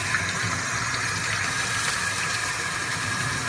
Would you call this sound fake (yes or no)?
no